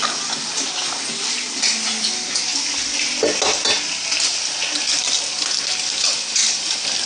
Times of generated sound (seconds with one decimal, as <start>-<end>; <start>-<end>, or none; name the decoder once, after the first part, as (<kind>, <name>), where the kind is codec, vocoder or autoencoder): none

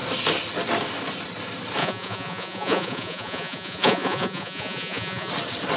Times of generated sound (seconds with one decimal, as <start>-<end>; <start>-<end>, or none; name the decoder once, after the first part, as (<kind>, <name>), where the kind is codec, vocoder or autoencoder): 1.8-5.3 (vocoder, Vocos)

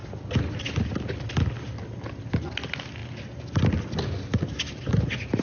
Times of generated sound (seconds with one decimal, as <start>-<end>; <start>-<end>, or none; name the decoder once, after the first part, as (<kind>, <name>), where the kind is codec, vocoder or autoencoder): none

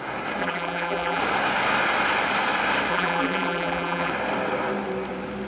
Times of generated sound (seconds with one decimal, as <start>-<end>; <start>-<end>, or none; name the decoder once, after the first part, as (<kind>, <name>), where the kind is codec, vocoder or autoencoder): 0.4-1.2 (vocoder, BigVGAN v2); 2.9-4.1

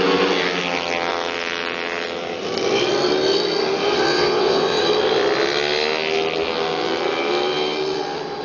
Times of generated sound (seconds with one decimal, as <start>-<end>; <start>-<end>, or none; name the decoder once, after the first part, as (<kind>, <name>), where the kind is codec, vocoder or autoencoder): 4.1-4.8 (vocoder, WaveNeXt)

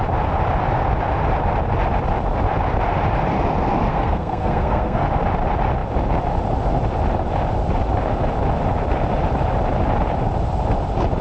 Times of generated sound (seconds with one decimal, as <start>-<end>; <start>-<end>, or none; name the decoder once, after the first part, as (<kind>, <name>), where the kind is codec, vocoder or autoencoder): 3.9-5.1 (codec, SNAC)